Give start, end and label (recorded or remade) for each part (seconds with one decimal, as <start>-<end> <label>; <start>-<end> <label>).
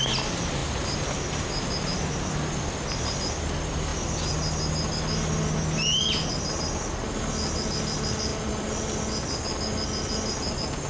0.0-8.3 recorded; 8.3-9.0 remade; 9.0-10.9 recorded